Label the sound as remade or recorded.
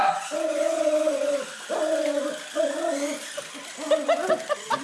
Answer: recorded